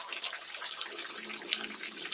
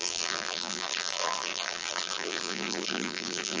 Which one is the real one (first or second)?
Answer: first